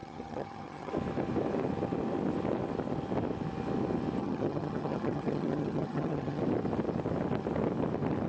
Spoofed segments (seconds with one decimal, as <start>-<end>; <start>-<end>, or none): 0.0-0.9; 4.2-6.4